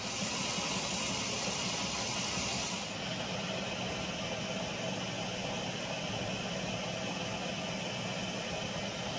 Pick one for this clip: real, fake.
real